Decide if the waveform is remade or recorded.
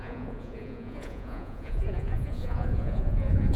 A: remade